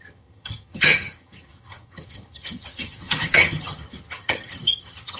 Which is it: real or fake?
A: fake